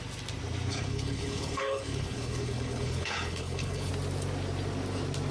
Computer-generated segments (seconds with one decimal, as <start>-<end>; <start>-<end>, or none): 0.7-3.9